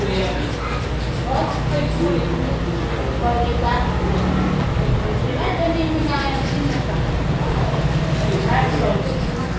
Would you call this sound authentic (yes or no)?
yes